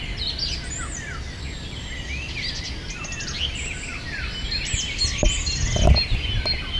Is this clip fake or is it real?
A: real